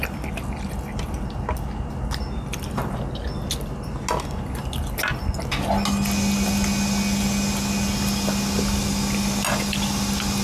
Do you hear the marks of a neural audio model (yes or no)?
no